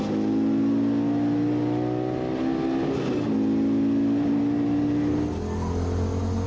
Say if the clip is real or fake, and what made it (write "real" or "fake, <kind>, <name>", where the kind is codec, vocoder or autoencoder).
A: real